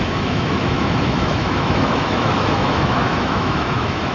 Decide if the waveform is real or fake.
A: fake